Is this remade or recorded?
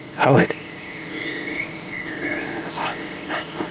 remade